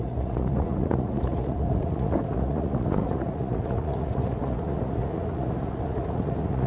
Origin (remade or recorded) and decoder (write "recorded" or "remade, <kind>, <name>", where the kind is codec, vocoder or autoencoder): remade, vocoder, Vocos